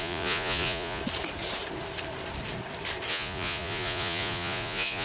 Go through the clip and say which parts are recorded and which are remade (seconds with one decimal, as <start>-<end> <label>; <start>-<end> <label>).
0.0-1.0 remade; 1.0-3.1 recorded; 3.1-5.0 remade